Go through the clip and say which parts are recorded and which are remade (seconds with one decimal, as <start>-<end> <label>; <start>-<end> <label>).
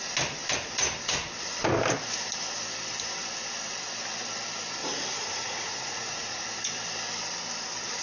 0.0-4.8 recorded; 4.8-6.4 remade; 6.4-8.0 recorded